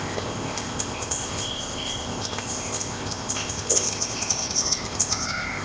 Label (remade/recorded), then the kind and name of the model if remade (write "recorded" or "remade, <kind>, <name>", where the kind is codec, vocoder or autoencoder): remade, codec, ZipCodec